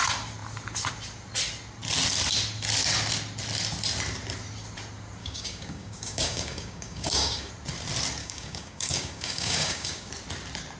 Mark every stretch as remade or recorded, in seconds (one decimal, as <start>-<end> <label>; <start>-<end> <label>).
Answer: 0.0-5.2 recorded; 5.2-7.5 remade; 7.5-8.2 recorded; 8.2-10.1 remade; 10.1-10.8 recorded